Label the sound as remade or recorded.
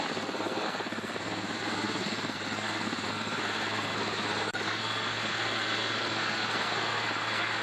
remade